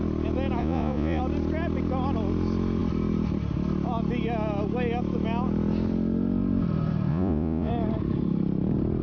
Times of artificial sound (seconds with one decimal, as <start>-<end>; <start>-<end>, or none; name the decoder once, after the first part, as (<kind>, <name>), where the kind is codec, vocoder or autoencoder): 0.6-1.2 (vocoder, Vocos); 7.1-7.7